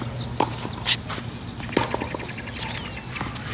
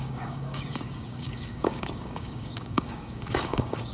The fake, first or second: second